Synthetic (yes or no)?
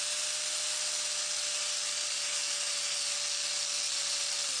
no